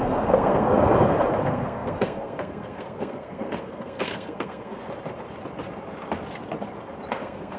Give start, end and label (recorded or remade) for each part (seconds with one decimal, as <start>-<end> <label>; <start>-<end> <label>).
0.0-0.7 remade; 0.7-1.4 recorded; 1.4-4.8 remade; 4.8-7.1 recorded; 7.1-7.6 remade